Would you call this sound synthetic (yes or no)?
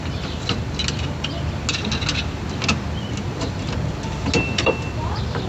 no